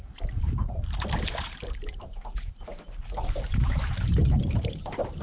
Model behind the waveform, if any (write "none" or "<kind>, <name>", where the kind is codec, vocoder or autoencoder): vocoder, BigVGAN v2